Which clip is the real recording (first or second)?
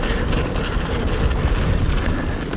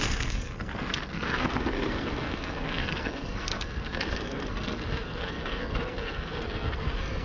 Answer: first